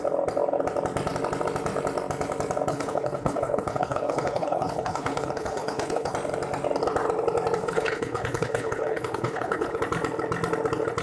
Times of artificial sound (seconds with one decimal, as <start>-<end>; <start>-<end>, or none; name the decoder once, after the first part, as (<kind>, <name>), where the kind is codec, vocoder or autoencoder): 2.7-6.1 (codec, HILCodec); 7.6-9.8